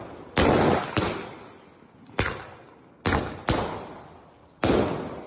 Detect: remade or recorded recorded